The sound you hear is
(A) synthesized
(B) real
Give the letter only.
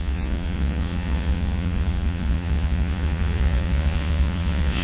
A